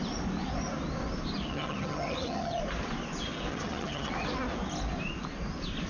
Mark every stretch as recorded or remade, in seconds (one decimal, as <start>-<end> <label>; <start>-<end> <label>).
0.0-1.5 recorded; 1.5-2.6 remade; 2.6-3.5 recorded; 3.5-4.1 remade; 4.1-5.9 recorded